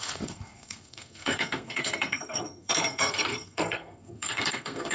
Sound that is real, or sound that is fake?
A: fake